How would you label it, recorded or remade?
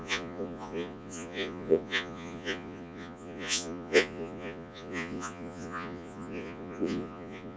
remade